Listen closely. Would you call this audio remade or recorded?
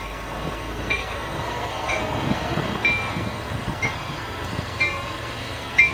remade